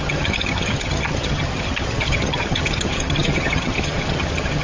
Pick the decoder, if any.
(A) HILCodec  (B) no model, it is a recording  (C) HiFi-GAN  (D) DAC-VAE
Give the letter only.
C